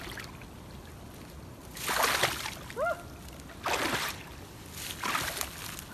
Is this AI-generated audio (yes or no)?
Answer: no